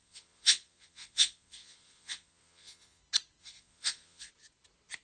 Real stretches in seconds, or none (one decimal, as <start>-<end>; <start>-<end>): 3.0-3.4; 4.3-5.0